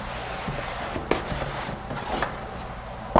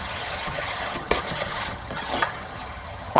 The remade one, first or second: second